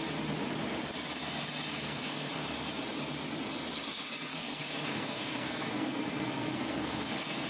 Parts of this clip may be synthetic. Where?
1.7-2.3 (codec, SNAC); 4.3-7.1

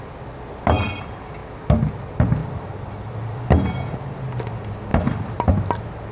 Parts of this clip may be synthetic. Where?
2.4-3.9 (vocoder, BigVGAN v2); 4.9-5.5

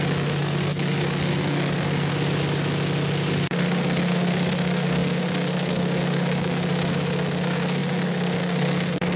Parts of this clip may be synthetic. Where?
0.0-2.1 (codec, SNAC); 3.3-9.2

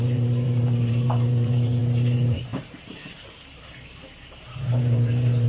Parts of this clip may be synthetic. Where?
0.0-5.5 (vocoder, BigVGAN v2)

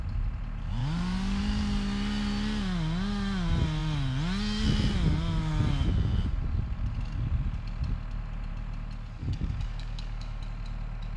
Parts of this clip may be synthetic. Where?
0.8-1.4 (codec, DAC); 9.2-10.4

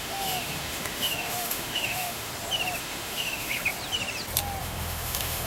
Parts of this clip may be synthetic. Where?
0.0-2.3 (autoencoder, DAC-VAE); 2.8-3.6; 4.6-5.5

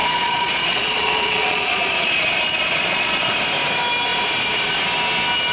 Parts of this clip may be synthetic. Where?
0.0-3.3 (vocoder, Vocos)

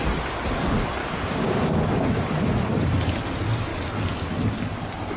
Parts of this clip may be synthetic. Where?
1.0-1.8 (codec, DAC)